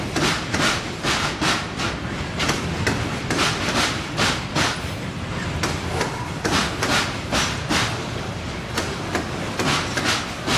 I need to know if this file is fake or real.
fake